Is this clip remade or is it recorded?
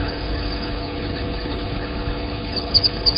remade